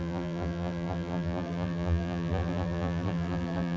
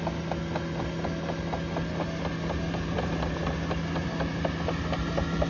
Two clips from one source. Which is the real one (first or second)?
second